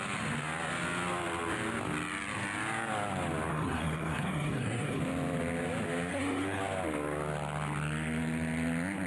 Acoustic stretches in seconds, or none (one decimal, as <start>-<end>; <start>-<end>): 0.0-3.5; 5.0-6.1; 6.6-9.1